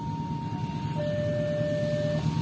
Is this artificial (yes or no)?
no